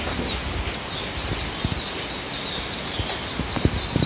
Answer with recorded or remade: recorded